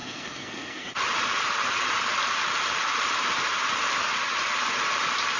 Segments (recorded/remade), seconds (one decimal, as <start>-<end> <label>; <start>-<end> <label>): 0.0-0.9 remade; 0.9-5.4 recorded